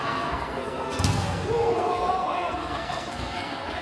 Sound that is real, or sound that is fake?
fake